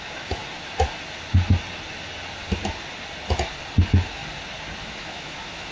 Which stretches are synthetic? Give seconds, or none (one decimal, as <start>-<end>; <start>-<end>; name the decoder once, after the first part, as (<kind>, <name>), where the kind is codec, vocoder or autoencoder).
0.0-0.4 (autoencoder, DAC-VAE); 3.8-4.2; 4.8-5.7